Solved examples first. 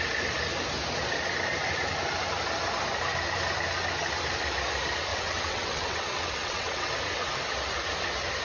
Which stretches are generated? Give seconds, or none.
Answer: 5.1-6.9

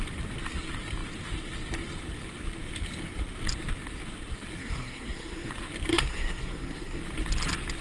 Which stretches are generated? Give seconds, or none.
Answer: 4.6-5.5; 5.9-7.0

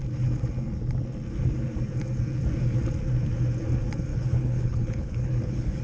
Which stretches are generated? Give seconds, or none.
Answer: 4.1-5.8

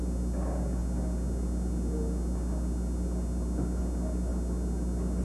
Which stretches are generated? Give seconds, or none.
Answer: none

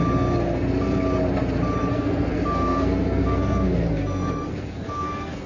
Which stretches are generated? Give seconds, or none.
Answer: 1.9-5.5